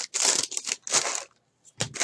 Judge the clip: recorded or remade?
recorded